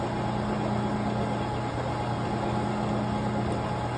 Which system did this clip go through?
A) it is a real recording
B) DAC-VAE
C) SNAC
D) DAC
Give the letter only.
A